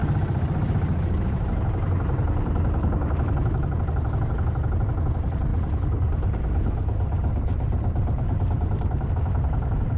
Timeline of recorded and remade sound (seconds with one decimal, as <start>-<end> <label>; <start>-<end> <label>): 0.0-5.5 recorded; 5.5-9.1 remade; 9.1-10.0 recorded